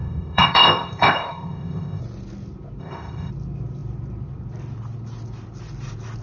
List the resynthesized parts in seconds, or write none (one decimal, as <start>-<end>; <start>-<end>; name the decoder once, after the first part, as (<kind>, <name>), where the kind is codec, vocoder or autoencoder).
0.0-2.0 (codec, ZipCodec); 2.8-3.3